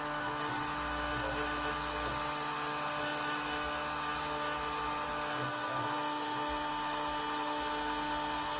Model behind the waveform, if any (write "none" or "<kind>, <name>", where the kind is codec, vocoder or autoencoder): none